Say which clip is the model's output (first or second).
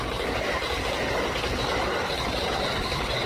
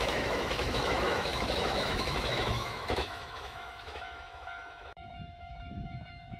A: second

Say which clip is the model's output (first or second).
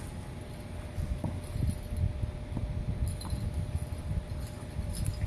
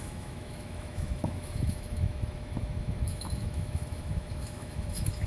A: second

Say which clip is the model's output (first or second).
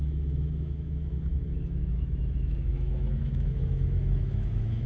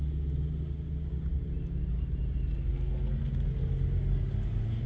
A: first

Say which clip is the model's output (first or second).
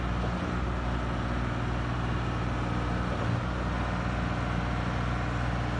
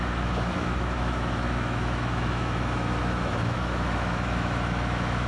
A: second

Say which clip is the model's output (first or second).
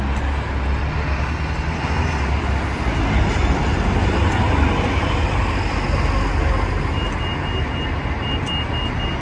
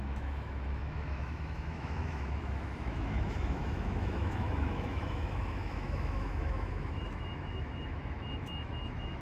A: second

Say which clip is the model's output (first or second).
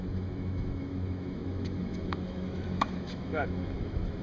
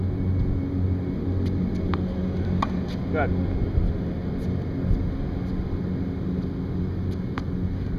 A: first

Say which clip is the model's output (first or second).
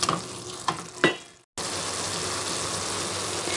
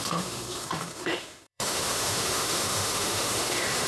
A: second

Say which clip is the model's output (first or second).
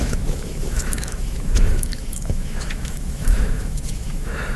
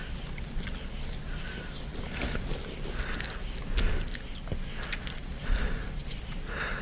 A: first